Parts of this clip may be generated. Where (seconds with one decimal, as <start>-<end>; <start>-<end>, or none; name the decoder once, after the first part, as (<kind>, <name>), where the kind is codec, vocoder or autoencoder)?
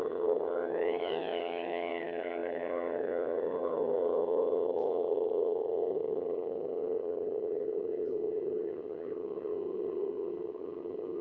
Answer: 0.0-11.2 (vocoder, HiFi-GAN)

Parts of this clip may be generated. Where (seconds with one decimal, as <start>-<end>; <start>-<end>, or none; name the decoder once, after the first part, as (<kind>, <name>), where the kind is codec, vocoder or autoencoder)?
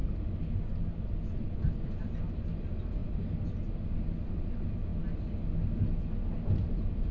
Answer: none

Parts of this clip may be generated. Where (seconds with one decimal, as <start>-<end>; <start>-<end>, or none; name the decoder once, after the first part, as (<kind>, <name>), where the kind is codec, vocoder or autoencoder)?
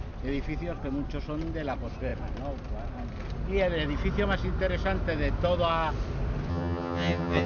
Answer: 6.5-7.5 (vocoder, HiFi-GAN)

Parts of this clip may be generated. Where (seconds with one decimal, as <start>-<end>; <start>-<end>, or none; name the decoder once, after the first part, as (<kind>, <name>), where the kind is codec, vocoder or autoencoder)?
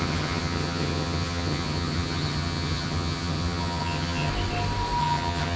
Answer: 0.0-4.3 (vocoder, HiFi-GAN); 5.0-5.6